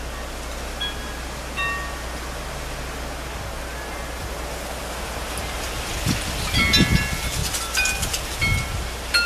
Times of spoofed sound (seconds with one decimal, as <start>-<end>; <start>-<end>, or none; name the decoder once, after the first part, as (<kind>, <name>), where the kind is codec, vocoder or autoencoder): none